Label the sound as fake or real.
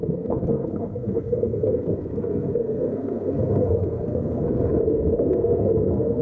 fake